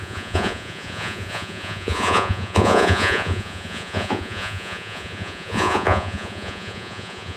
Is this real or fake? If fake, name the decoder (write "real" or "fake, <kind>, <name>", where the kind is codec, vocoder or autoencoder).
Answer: fake, vocoder, Vocos